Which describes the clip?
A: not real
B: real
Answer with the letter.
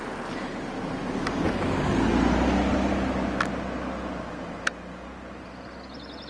B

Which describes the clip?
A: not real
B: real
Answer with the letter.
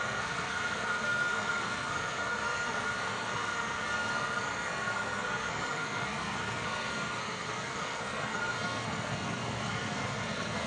A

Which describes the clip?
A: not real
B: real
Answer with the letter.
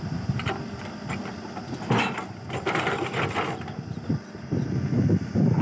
B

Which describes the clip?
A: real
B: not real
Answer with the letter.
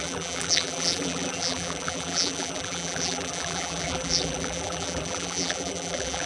B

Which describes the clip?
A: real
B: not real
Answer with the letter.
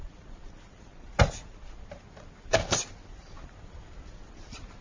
A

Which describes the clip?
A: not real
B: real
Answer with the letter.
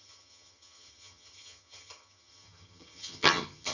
A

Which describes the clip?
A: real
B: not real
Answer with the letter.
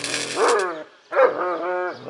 A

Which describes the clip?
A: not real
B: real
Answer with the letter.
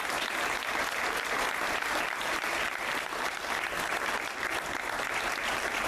B